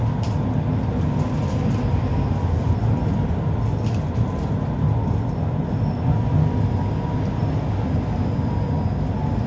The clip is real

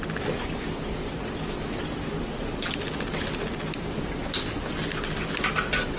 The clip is real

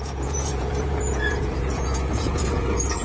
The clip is fake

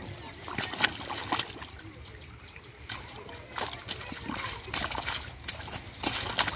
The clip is real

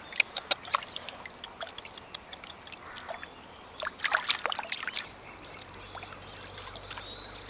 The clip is real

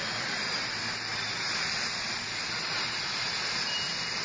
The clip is real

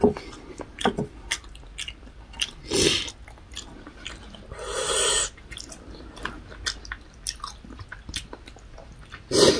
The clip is real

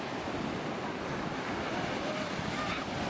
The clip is real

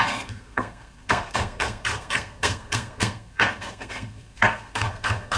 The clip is fake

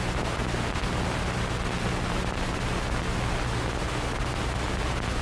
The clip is real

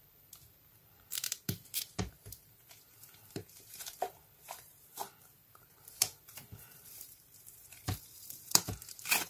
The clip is fake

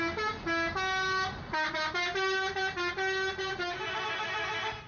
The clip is real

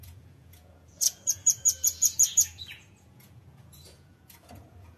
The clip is fake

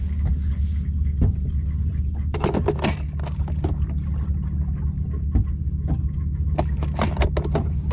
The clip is real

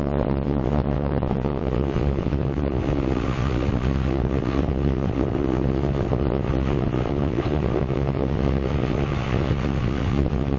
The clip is fake